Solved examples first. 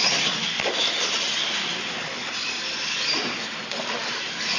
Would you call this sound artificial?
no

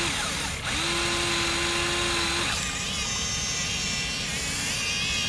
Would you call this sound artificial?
no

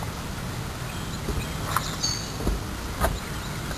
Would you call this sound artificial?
no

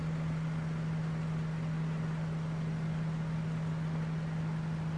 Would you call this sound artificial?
no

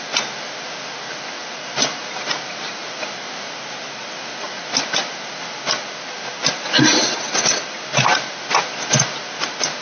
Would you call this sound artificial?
no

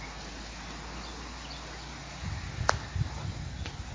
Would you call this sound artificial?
no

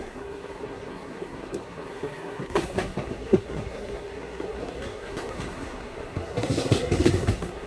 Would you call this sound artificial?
yes